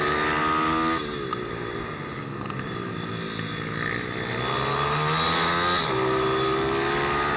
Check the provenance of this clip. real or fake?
real